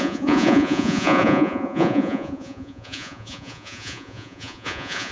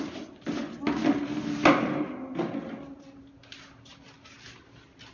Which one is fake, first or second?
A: first